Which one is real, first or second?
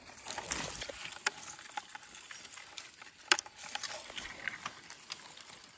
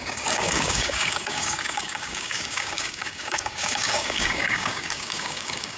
first